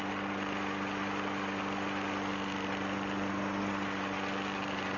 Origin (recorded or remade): recorded